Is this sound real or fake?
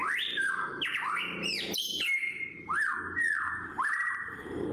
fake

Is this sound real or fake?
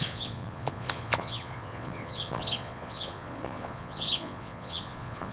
fake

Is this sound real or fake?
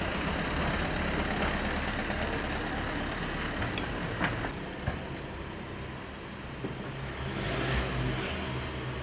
real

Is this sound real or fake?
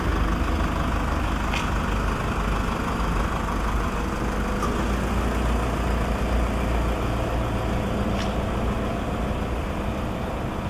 real